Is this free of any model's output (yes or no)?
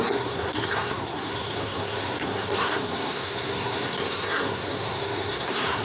no